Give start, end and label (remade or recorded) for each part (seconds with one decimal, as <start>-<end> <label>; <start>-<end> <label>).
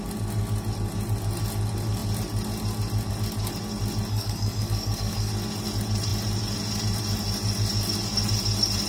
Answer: 0.0-4.1 recorded; 4.1-5.3 remade; 5.3-8.9 recorded